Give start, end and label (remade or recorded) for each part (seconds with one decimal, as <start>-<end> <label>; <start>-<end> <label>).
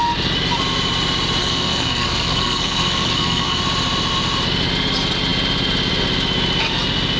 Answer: 0.0-1.4 recorded; 1.4-3.6 remade; 3.6-7.2 recorded